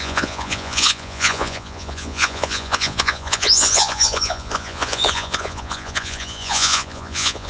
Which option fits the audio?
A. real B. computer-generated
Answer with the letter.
B